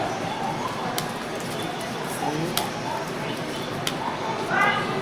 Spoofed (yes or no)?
no